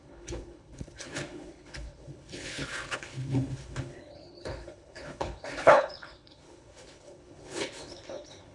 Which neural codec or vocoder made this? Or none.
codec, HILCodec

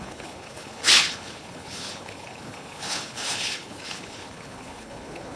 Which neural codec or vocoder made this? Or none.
codec, HILCodec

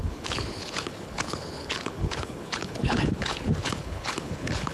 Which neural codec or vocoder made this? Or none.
codec, HILCodec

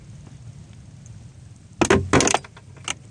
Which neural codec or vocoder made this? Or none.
none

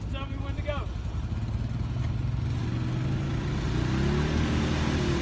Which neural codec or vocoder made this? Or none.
none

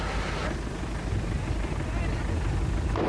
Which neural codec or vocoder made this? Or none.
none